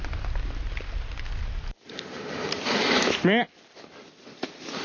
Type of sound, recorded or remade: recorded